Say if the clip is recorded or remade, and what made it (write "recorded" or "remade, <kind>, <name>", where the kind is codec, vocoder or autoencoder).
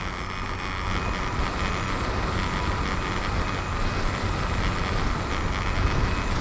recorded